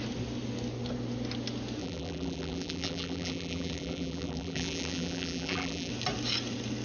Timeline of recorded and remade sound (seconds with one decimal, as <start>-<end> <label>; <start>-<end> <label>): 0.0-1.8 recorded; 1.8-5.9 remade; 5.9-6.8 recorded